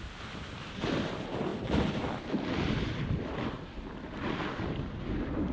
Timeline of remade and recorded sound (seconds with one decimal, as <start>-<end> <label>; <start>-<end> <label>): 0.0-5.5 recorded